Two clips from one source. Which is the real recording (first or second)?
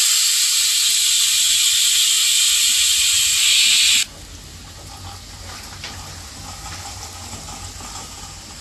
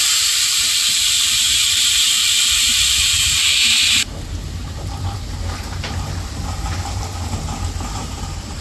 first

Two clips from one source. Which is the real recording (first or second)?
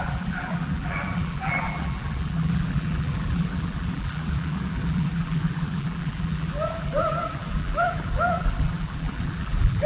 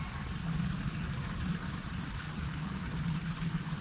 second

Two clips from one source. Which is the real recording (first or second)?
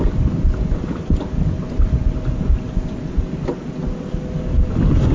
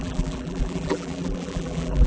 first